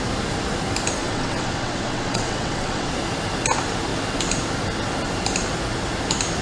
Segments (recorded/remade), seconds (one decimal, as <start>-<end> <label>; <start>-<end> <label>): 0.0-1.0 recorded; 1.0-2.9 remade; 2.9-6.4 recorded